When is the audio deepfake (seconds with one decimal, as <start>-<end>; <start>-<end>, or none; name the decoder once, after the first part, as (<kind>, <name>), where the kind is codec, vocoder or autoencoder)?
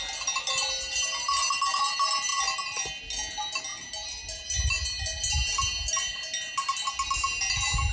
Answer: none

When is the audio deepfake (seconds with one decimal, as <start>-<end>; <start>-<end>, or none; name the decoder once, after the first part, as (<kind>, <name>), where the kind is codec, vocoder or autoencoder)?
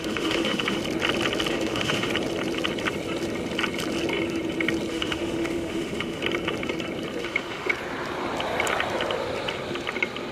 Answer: 0.0-0.8 (autoencoder, DAC-VAE); 1.5-2.1; 4.9-6.2; 7.2-7.7